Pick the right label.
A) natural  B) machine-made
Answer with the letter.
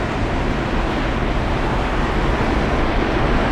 A